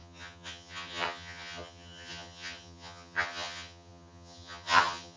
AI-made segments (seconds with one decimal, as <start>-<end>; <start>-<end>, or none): 0.0-5.2